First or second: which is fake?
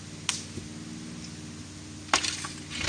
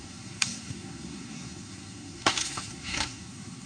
second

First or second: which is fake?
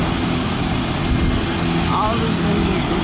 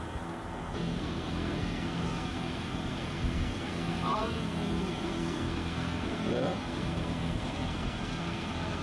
second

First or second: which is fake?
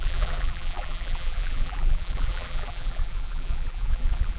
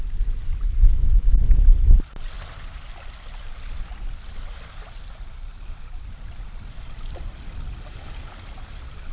first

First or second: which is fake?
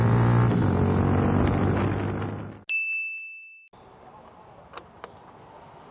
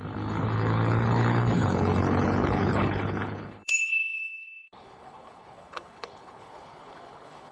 second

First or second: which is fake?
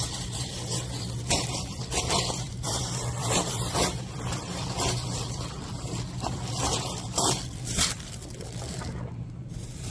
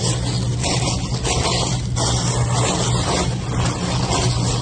first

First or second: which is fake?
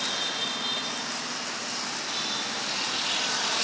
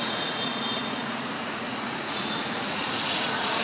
second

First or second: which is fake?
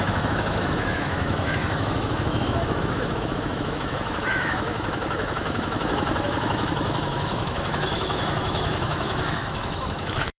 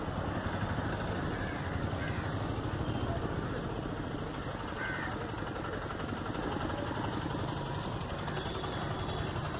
first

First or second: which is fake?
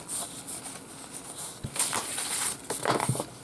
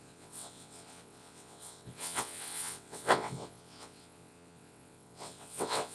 second